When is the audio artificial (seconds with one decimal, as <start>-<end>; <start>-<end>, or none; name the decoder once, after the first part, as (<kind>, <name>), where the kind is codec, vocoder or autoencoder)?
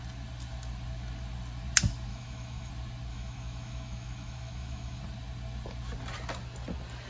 2.1-2.7 (autoencoder, DAC-VAE); 3.1-5.0